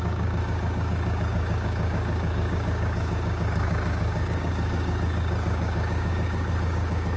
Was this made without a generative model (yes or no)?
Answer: no